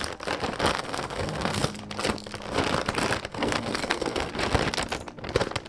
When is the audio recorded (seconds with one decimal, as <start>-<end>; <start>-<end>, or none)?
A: 0.0-0.7; 1.8-3.3; 4.3-5.7

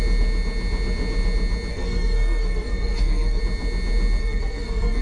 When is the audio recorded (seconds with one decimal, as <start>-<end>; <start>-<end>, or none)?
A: 0.0-1.7; 3.4-4.2

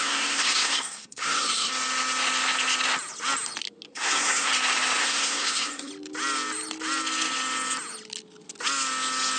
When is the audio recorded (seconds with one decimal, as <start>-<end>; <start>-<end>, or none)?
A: 1.7-3.9; 4.5-5.0; 5.9-9.4

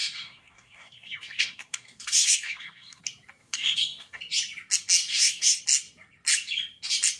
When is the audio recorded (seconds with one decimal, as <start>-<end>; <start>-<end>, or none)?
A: 3.0-3.4; 4.2-5.1; 5.6-7.2

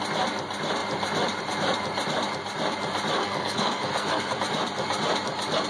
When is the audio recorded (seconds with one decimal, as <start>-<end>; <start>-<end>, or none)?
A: 0.0-3.2; 4.4-5.7

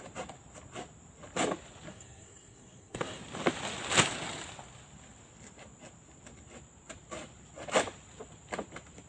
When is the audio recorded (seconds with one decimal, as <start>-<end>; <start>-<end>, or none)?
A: 0.0-1.9; 3.2-9.1

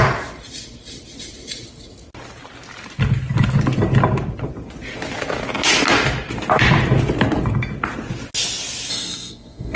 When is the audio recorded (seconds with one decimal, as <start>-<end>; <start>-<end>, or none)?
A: 0.0-8.9

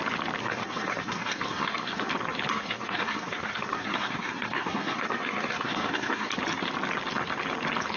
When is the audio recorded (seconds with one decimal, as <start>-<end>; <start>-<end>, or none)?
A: 0.0-0.4; 2.1-2.5; 6.3-8.0